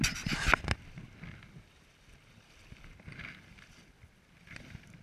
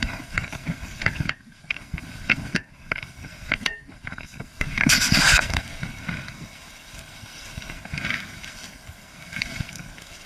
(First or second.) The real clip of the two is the first